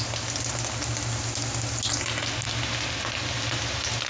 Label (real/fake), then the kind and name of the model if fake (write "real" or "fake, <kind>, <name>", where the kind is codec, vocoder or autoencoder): real